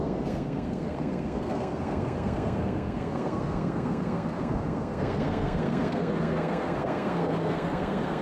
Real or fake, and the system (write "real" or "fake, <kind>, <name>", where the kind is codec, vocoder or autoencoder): fake, codec, SNAC